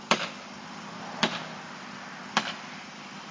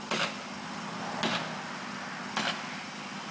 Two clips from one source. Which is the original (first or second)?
second